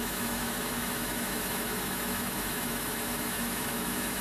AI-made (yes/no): yes